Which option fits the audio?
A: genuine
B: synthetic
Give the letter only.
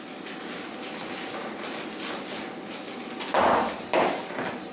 A